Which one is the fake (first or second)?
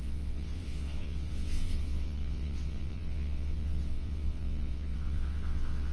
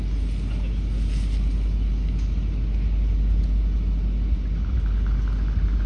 first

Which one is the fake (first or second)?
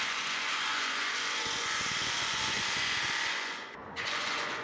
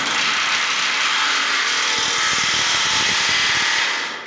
first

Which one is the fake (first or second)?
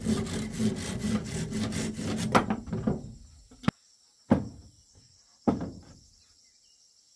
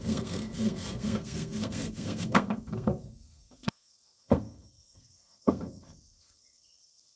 second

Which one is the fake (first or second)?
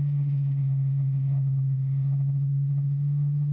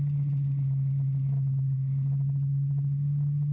first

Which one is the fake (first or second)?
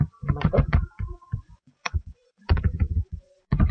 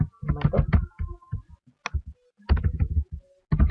first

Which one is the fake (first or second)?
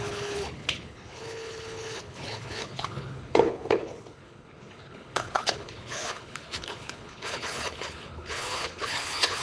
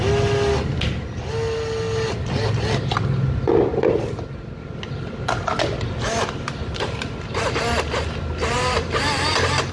first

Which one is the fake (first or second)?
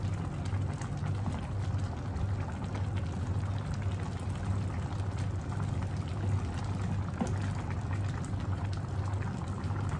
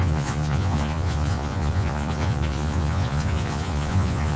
second